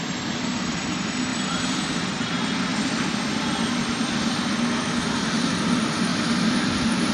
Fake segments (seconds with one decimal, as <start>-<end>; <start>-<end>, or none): 1.3-1.9; 2.7-4.5; 6.1-7.1